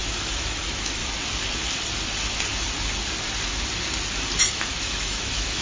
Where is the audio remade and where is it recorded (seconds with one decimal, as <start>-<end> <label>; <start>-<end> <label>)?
0.0-1.0 remade; 1.0-4.4 recorded; 4.4-5.6 remade